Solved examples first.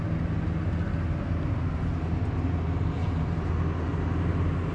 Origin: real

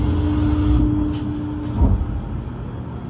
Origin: real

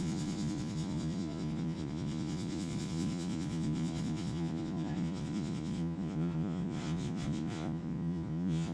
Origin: fake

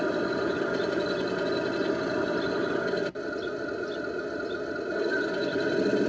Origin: real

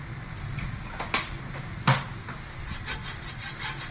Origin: real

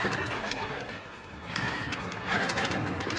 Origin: fake